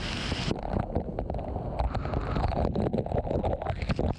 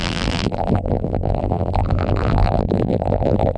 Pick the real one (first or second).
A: first